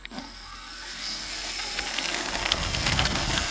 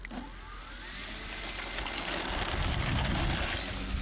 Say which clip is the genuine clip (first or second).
second